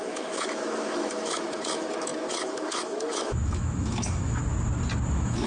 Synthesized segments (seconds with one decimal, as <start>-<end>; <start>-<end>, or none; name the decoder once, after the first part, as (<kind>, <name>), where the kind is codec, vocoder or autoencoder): 0.0-4.4 (autoencoder, DAC-VAE); 5.1-5.5